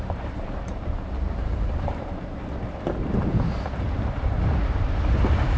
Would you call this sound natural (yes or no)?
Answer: no